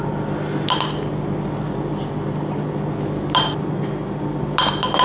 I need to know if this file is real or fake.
real